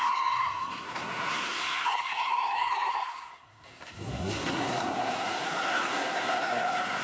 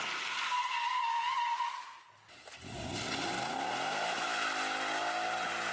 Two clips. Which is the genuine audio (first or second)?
second